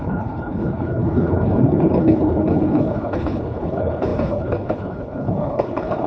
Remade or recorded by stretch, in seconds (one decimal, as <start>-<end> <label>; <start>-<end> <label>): 0.0-6.1 remade